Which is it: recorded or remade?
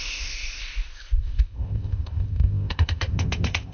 remade